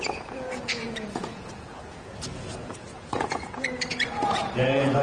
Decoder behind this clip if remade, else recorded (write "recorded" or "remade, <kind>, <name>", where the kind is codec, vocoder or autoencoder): remade, vocoder, Vocos